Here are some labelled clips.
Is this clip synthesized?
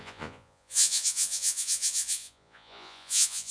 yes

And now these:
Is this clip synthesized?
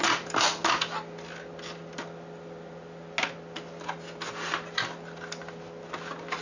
no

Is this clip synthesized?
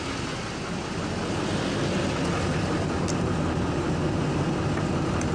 no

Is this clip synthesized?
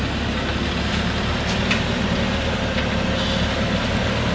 no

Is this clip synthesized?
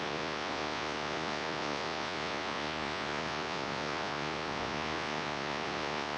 yes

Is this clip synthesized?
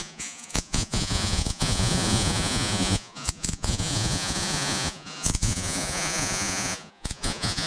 yes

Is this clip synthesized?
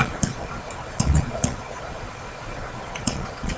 yes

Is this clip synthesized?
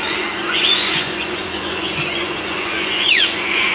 yes